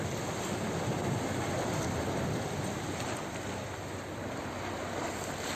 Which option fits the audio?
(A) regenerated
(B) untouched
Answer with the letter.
B